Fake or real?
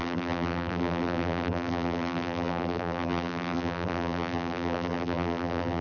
fake